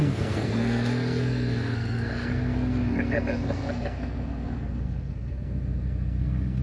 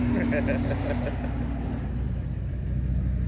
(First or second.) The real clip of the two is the second